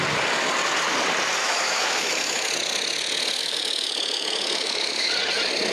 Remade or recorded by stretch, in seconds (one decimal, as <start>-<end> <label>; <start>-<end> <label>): 0.0-1.4 recorded; 1.4-2.5 remade; 2.5-3.4 recorded; 3.4-5.1 remade; 5.1-5.7 recorded

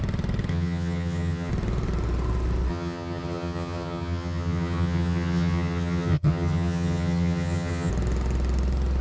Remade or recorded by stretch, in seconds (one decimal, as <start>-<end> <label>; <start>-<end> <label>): 0.0-0.5 recorded; 0.5-1.5 remade; 1.5-2.7 recorded; 2.7-7.9 remade; 7.9-9.0 recorded

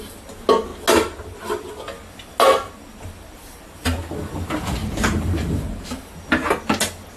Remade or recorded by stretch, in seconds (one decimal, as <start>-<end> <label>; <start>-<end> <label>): 0.0-4.8 recorded; 4.8-6.1 remade; 6.1-7.2 recorded

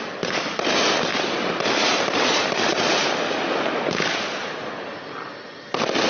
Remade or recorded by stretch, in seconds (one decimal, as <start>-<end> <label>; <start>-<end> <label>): 0.0-6.1 recorded

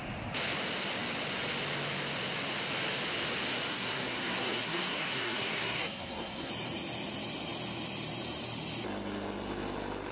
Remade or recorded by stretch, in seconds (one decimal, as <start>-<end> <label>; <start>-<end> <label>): 0.0-3.7 recorded; 3.7-6.5 remade; 6.5-10.1 recorded

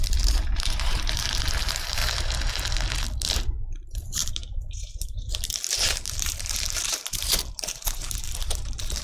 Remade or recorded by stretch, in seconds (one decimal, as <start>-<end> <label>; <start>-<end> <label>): 0.0-2.0 remade; 2.0-3.3 recorded; 3.3-9.0 remade

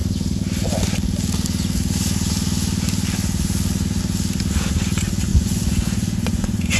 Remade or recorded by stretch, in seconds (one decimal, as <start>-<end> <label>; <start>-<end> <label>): 0.0-5.3 recorded; 5.3-6.8 remade

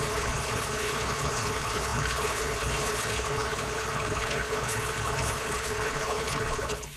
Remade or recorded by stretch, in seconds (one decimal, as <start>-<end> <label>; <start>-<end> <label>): 0.0-7.0 remade